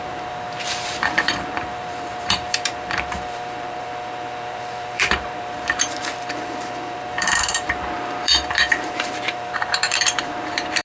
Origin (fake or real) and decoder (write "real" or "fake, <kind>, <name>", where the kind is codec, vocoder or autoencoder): fake, vocoder, BigVGAN v2